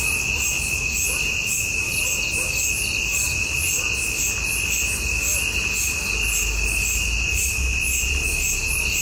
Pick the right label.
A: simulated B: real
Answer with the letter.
B